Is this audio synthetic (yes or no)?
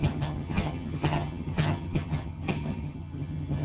yes